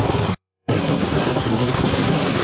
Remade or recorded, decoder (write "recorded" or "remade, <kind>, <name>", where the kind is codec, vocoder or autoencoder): remade, codec, SNAC